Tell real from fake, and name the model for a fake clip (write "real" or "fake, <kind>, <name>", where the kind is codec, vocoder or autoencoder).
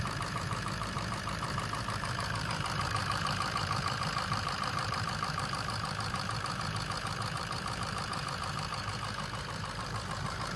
fake, vocoder, BigVGAN v2